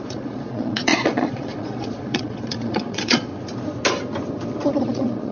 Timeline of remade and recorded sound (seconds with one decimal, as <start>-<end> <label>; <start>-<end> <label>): 0.0-3.3 remade; 3.3-4.7 recorded; 4.7-5.3 remade